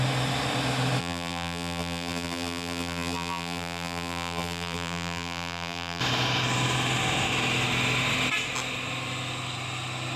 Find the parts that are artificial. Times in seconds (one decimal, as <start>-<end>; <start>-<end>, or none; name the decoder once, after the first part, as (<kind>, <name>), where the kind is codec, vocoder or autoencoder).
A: 1.0-6.0 (vocoder, BigVGAN v2)